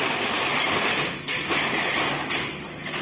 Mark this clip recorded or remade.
recorded